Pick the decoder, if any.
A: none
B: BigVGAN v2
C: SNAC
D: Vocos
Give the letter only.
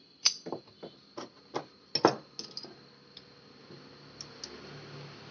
A